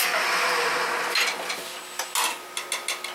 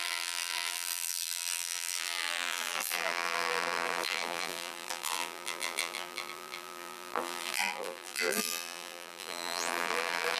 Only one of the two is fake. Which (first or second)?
second